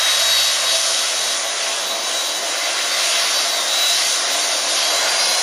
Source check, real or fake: real